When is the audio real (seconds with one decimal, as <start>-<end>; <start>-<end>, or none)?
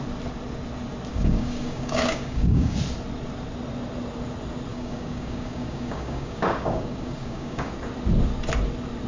0.0-1.1; 2.8-4.7; 7.7-9.1